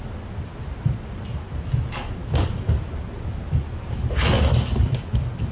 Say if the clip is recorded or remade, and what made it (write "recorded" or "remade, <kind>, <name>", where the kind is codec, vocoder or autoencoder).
recorded